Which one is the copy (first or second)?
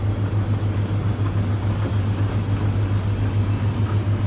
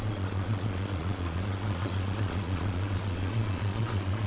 second